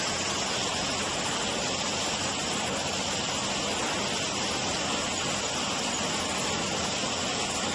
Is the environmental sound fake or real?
real